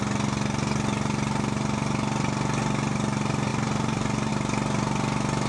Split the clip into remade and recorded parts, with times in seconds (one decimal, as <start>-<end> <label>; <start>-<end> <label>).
0.0-3.5 recorded; 3.5-4.3 remade; 4.3-5.5 recorded